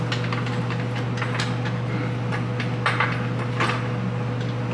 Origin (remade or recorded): recorded